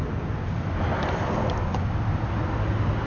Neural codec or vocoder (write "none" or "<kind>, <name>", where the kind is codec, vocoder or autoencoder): none